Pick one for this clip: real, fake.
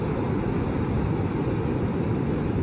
real